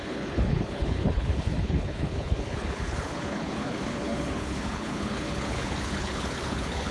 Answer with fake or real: fake